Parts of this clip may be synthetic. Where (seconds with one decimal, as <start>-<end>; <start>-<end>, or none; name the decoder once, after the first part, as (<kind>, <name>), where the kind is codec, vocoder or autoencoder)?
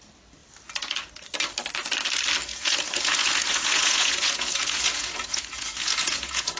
2.5-6.6 (vocoder, Vocos)